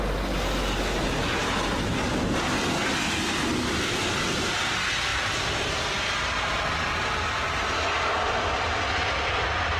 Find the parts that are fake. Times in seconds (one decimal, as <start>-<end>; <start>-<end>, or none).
none